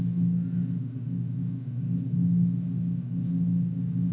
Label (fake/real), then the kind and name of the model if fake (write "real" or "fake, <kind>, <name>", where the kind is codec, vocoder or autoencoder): fake, autoencoder, DAC-VAE